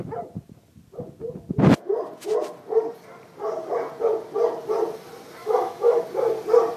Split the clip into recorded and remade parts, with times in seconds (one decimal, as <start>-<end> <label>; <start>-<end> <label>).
0.0-5.4 recorded; 5.4-6.0 remade; 6.0-6.8 recorded